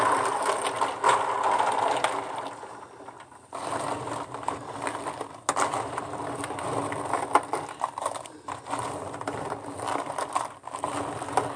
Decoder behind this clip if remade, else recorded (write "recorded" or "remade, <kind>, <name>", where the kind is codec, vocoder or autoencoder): recorded